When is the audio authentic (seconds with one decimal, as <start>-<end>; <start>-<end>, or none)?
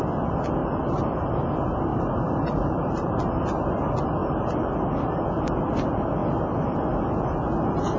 0.0-1.9; 3.2-8.0